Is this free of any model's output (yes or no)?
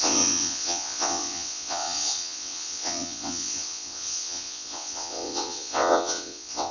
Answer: no